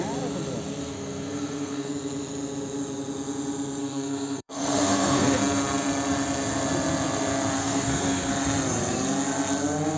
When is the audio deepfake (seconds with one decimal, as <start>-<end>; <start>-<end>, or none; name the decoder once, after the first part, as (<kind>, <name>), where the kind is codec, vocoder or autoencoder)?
0.8-1.9 (codec, SNAC); 3.8-5.4; 7.6-8.3